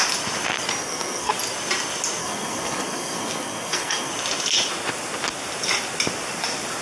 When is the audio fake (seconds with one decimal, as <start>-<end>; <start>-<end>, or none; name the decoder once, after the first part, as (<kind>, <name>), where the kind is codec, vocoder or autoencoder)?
0.8-1.3 (codec, SNAC); 2.2-4.1